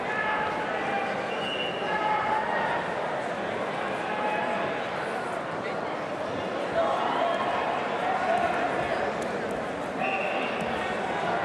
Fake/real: real